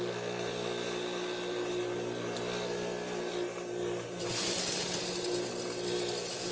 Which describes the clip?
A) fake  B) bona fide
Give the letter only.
B